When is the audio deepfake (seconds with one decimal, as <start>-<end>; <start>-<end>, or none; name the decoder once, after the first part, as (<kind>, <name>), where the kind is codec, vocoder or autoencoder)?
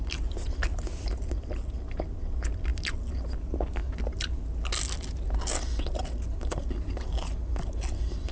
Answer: none